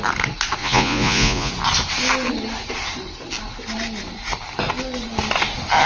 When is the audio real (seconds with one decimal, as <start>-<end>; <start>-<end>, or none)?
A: 0.0-0.6; 1.5-5.9